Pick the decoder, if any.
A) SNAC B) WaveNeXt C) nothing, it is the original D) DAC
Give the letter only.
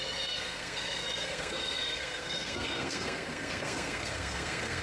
A